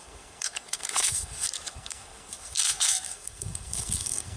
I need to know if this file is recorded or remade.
remade